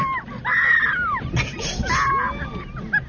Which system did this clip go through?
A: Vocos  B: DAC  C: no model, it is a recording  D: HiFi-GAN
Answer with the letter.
C